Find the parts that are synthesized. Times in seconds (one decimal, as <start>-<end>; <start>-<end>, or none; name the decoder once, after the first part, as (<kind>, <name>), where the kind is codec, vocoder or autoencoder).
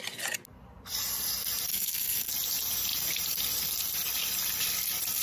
1.7-2.3 (codec, SNAC)